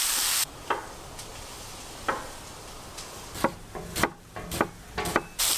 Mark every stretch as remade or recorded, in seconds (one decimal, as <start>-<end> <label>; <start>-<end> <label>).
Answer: 0.0-5.6 recorded